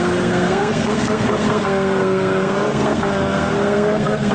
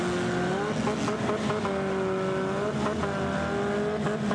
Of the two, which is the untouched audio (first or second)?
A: second